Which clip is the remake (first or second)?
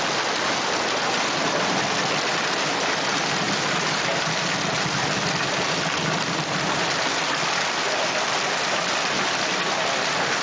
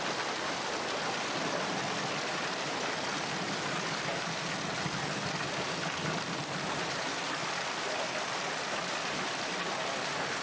second